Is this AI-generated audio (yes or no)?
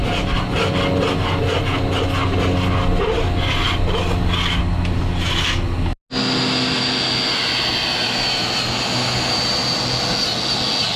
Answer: no